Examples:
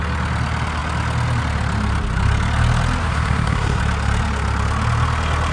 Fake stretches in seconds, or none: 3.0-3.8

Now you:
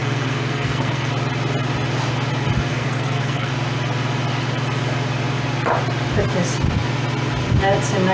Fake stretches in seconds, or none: 0.0-1.1; 2.7-3.5